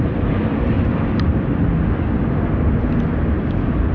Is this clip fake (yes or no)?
no